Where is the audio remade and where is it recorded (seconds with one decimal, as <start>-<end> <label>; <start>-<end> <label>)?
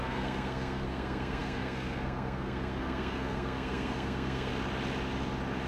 0.0-4.5 remade; 4.5-5.7 recorded